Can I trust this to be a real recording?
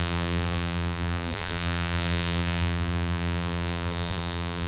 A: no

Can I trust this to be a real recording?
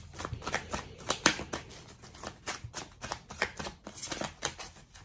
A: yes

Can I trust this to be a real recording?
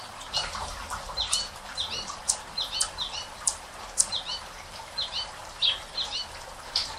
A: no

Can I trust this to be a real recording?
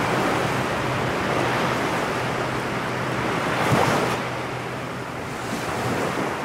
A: yes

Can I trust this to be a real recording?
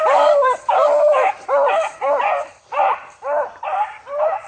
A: no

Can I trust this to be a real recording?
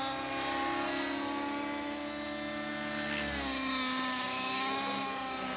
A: yes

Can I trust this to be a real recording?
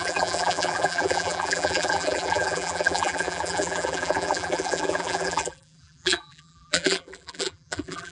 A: no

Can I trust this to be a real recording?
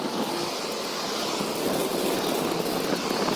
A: yes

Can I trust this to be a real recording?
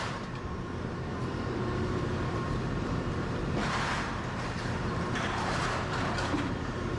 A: no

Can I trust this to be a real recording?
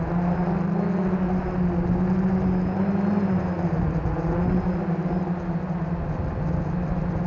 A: yes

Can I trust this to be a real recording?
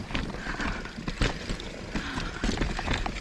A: no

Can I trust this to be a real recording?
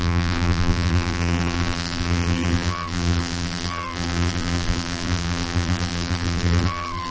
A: no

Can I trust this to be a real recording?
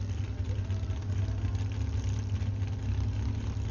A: no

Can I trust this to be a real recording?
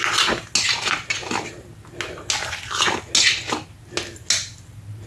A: yes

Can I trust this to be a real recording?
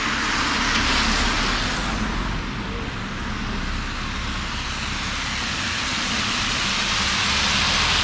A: yes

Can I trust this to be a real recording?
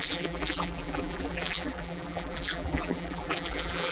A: no